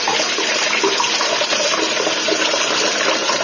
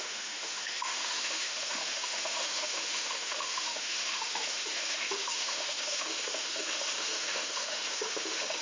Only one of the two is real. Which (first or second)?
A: first